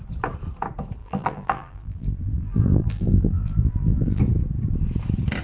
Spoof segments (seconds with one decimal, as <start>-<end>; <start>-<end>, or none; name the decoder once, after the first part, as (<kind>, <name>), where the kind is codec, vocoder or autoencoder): 1.0-4.2 (vocoder, BigVGAN v2)